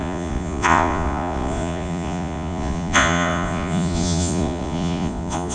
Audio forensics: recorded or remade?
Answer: remade